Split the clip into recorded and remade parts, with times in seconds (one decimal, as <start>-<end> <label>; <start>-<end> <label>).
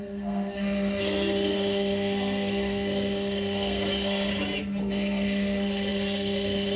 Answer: 0.0-4.3 remade; 4.3-4.8 recorded; 4.8-6.8 remade